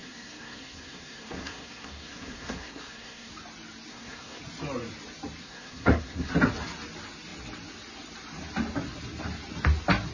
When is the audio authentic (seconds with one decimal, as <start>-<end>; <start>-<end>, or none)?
3.3-3.9; 4.4-5.4; 6.3-10.1